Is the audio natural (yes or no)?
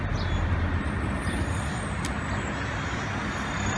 yes